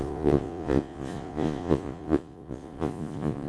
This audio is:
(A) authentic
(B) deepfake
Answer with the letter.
B